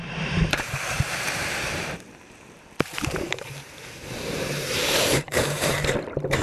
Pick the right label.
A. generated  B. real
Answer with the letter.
A